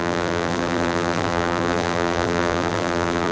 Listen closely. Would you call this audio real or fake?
fake